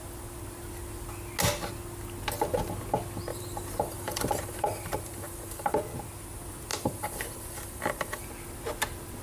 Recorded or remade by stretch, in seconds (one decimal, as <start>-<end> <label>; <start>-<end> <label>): 0.0-3.3 recorded; 3.3-5.8 remade; 5.8-6.7 recorded; 6.7-8.3 remade; 8.3-9.2 recorded